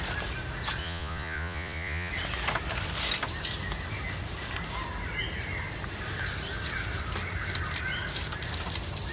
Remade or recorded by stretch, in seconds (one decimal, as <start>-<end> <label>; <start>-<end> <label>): 0.0-0.8 recorded; 0.8-2.1 remade; 2.1-9.1 recorded